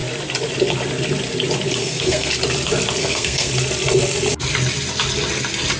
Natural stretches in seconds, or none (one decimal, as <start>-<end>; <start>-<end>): 0.0-1.8; 2.3-3.0; 3.5-5.8